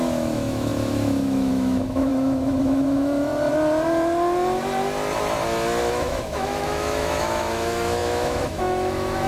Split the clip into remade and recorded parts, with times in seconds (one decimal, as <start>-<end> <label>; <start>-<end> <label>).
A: 0.0-3.3 remade; 3.3-5.9 recorded; 5.9-9.3 remade